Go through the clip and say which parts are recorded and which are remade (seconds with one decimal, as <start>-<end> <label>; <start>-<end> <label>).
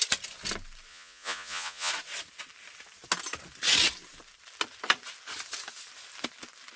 0.0-0.9 recorded; 0.9-1.9 remade; 1.9-6.8 recorded